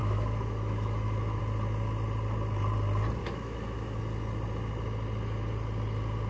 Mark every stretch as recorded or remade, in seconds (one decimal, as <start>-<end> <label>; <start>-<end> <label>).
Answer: 0.0-1.4 remade; 1.4-3.2 recorded; 3.2-4.0 remade; 4.0-6.3 recorded